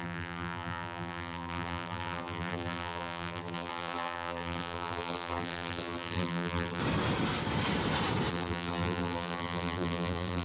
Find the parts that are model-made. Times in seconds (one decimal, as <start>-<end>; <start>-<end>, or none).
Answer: 0.0-6.8; 8.3-10.4